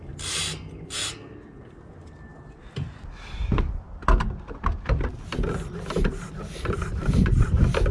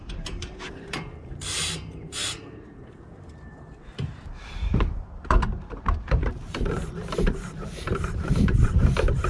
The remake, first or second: second